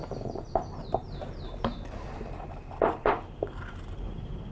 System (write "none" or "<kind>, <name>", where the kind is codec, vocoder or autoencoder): vocoder, BigVGAN v2